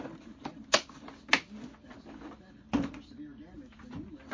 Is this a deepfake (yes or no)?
no